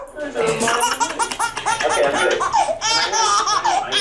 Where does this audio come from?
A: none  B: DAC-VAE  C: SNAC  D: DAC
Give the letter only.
A